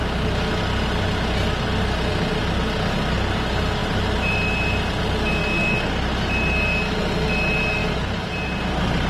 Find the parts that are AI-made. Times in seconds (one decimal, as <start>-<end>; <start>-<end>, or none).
3.8-4.9